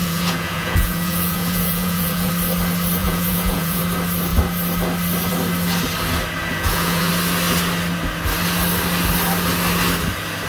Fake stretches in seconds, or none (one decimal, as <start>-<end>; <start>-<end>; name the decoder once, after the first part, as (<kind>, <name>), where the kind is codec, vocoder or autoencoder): 0.0-2.3 (vocoder, Vocos); 3.0-3.8; 6.5-7.1